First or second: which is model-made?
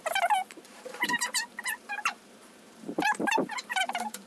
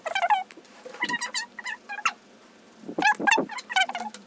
first